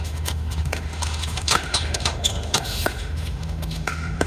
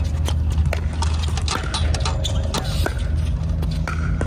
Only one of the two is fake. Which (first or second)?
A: first